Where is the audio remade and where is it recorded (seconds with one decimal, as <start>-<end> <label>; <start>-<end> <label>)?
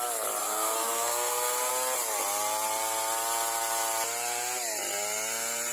0.0-0.4 recorded; 0.4-1.7 remade; 1.7-5.7 recorded